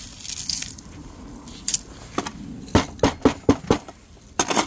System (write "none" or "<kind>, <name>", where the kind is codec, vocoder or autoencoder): none